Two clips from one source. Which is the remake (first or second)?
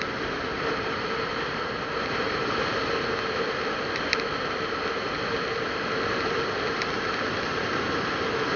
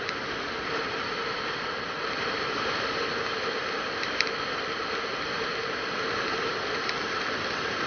second